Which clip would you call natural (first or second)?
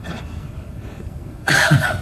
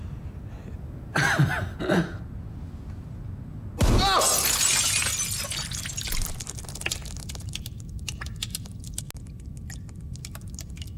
second